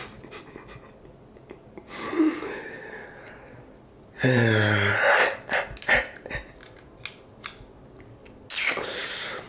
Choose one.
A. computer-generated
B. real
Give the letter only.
B